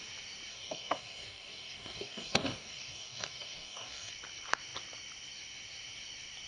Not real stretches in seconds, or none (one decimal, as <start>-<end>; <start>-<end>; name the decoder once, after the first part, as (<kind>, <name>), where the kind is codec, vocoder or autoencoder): 0.5-4.1 (codec, DAC)